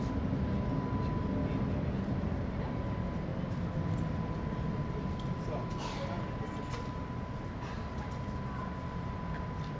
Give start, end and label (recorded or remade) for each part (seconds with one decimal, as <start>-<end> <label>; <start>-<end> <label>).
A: 0.0-9.8 recorded